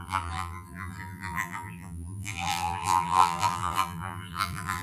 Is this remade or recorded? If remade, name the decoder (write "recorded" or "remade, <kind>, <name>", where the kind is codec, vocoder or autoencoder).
remade, vocoder, BigVGAN v2